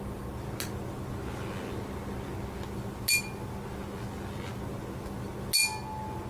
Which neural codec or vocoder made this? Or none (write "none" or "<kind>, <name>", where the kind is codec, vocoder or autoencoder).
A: none